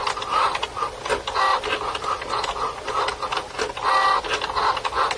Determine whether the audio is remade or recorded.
recorded